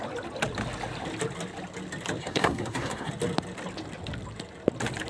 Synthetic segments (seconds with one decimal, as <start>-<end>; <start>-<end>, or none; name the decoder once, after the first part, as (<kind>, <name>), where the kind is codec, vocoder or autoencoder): 2.2-3.1 (codec, SNAC)